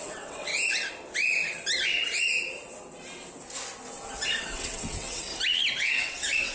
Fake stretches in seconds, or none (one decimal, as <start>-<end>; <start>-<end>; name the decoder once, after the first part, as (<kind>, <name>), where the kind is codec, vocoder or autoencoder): 0.0-0.5 (vocoder, WaveNeXt); 4.4-5.3; 5.9-6.5